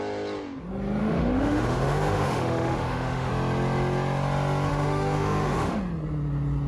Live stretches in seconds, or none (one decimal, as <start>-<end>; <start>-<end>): 0.0-1.0; 3.3-4.7; 5.8-6.7